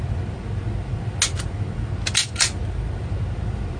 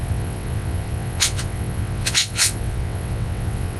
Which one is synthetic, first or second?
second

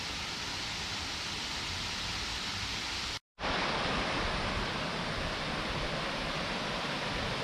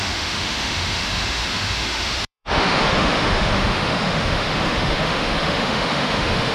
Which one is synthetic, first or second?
second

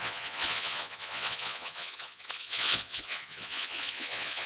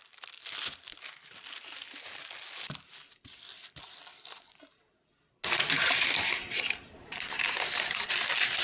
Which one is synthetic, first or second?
first